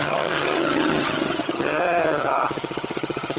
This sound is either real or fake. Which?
fake